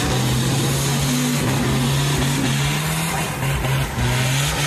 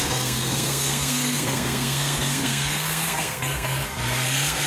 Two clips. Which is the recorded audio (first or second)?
first